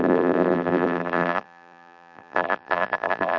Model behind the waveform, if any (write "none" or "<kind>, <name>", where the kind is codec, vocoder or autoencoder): vocoder, BigVGAN v2